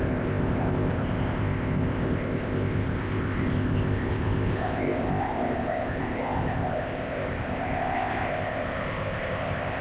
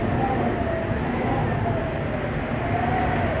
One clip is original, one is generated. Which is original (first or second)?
second